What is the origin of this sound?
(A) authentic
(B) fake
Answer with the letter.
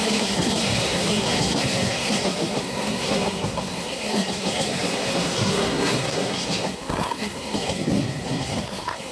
B